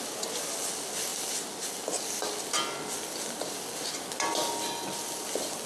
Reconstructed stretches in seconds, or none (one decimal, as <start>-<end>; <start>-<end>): none